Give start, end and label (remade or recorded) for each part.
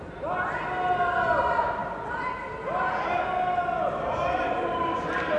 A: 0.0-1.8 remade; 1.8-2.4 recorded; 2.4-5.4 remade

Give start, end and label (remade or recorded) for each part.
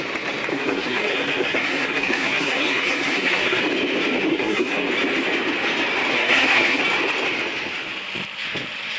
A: 0.0-0.5 recorded; 0.5-3.6 remade; 3.6-4.3 recorded; 4.3-4.9 remade; 4.9-6.1 recorded; 6.1-6.8 remade; 6.8-9.0 recorded